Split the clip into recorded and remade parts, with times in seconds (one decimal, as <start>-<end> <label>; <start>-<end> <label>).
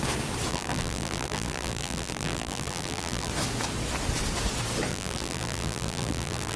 0.0-0.5 recorded; 0.5-3.3 remade; 3.3-4.9 recorded; 4.9-6.6 remade